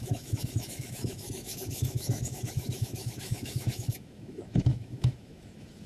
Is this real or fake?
fake